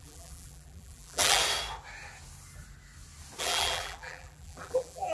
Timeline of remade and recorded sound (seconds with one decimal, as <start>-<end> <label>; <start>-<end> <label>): 0.0-1.4 remade; 1.4-3.4 recorded; 3.4-5.1 remade